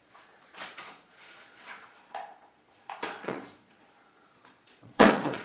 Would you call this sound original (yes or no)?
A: no